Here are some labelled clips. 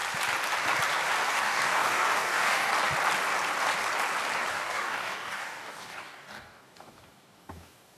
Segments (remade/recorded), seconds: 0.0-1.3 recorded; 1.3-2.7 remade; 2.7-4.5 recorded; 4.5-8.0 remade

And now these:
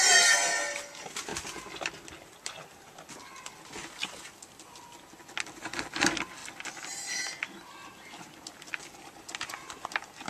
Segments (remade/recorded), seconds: 0.0-10.3 recorded

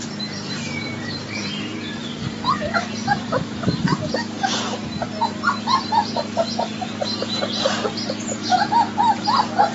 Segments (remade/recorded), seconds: 0.0-3.9 remade; 3.9-5.3 recorded; 5.3-9.7 remade